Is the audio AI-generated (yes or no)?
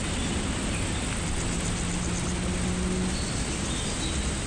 no